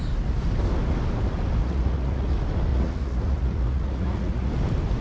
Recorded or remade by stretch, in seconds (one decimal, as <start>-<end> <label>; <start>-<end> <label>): 0.0-1.6 recorded; 1.6-2.3 remade; 2.3-2.7 recorded; 2.7-4.5 remade; 4.5-5.0 recorded